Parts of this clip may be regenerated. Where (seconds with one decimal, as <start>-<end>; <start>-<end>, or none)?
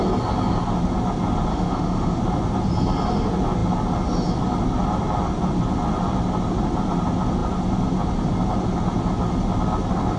1.5-2.2